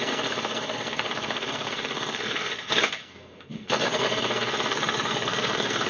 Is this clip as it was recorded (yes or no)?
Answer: no